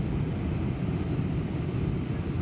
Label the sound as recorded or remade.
recorded